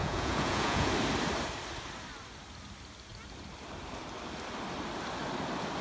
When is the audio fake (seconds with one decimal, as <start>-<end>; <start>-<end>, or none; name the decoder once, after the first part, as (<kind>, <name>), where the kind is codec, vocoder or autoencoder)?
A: 0.0-0.9 (vocoder, Vocos)